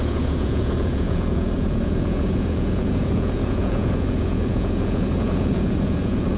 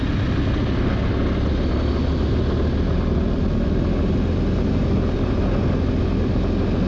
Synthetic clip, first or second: first